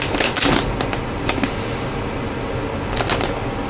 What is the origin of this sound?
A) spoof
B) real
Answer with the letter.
B